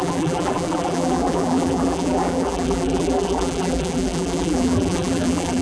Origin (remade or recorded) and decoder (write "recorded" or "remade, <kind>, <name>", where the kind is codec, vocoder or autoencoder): remade, vocoder, BigVGAN v2